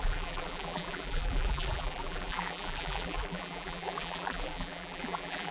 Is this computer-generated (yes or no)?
yes